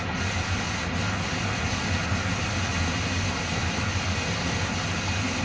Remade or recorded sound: recorded